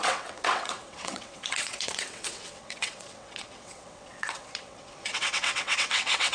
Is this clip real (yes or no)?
no